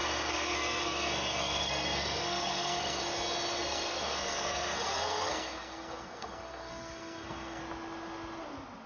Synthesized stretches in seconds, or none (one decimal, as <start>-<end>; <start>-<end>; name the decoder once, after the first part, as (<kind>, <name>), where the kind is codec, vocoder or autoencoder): 0.0-3.0 (codec, SNAC); 3.6-7.6